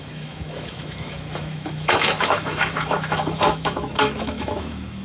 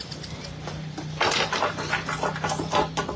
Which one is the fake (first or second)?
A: first